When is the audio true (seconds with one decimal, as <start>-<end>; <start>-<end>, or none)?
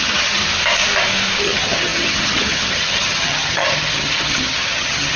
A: 0.4-1.4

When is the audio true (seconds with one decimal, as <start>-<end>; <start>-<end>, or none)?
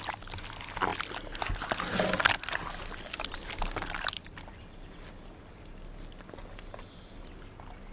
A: 0.0-7.9